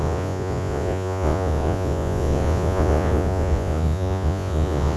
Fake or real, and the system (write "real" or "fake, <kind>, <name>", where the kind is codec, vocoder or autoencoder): fake, vocoder, Vocos